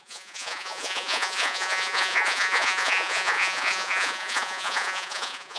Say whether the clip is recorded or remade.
remade